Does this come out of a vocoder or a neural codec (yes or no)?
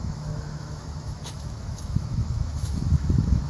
yes